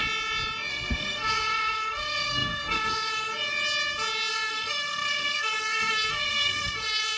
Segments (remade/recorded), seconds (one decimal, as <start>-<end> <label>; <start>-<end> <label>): 0.0-0.7 recorded; 0.7-3.3 remade; 3.3-4.3 recorded; 4.3-7.2 remade

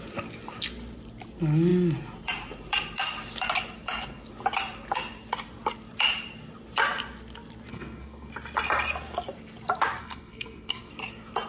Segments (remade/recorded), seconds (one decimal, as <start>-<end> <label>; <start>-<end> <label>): 0.0-7.7 recorded; 7.7-8.3 remade; 8.3-10.0 recorded; 10.0-10.9 remade; 10.9-11.5 recorded

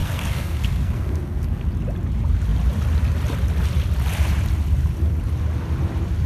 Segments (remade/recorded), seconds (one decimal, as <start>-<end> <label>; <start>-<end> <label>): 0.0-1.7 remade; 1.7-6.3 recorded

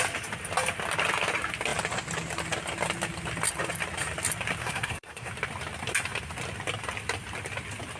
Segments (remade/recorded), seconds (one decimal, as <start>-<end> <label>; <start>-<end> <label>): 0.0-4.6 recorded; 4.6-5.3 remade; 5.3-8.0 recorded

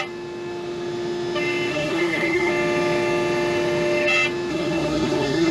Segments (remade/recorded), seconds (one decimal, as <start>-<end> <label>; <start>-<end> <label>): 0.0-1.7 recorded; 1.7-2.5 remade; 2.5-4.5 recorded; 4.5-5.5 remade

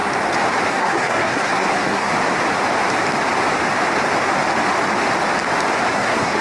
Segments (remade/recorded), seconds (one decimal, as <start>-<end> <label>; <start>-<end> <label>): 0.0-0.7 recorded; 0.7-2.1 remade; 2.1-5.9 recorded; 5.9-6.4 remade

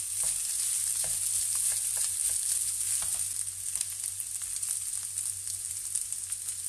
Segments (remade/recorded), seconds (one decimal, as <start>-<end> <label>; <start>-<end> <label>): 0.0-6.7 recorded